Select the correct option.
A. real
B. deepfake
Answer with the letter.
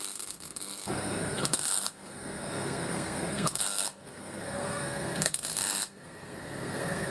B